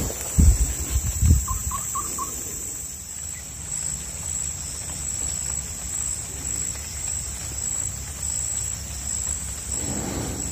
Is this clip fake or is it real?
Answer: real